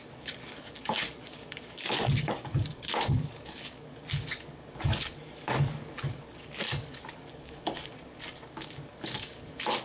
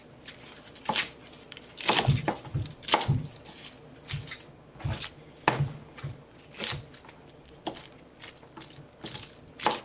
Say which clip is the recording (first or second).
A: second